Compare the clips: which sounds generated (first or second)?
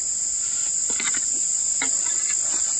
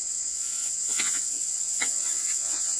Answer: second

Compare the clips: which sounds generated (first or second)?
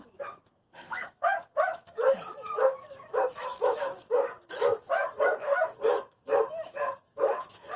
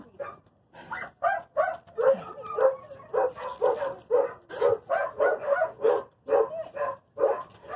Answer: first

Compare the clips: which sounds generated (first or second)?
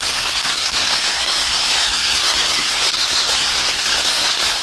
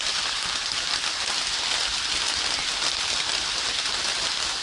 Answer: first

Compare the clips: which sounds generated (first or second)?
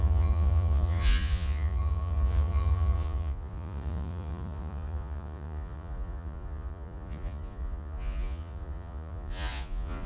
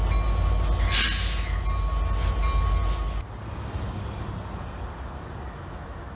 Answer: first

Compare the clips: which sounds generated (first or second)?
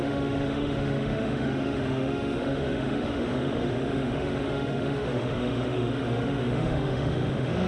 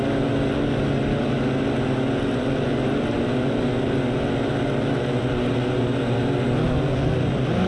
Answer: first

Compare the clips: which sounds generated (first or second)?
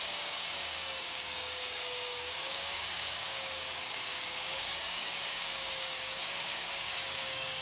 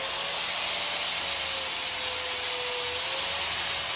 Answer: first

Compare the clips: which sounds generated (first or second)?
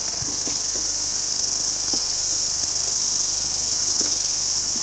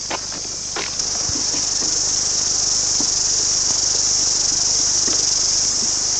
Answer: first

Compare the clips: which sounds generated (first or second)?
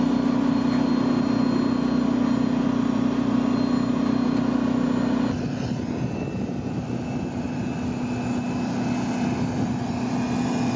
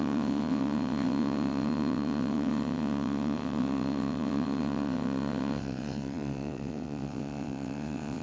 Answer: second